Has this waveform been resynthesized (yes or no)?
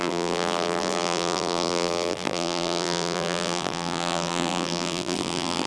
yes